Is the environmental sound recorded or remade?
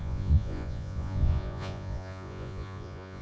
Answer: remade